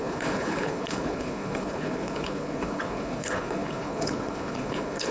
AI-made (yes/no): yes